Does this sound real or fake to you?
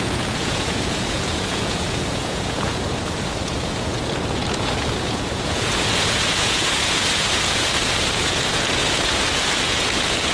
fake